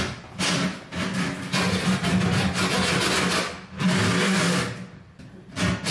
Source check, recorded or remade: recorded